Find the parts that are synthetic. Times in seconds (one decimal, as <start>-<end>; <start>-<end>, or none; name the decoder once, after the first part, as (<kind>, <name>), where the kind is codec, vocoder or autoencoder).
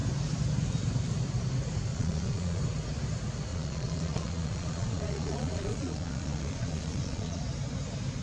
1.9-2.6 (vocoder, Vocos); 3.5-7.4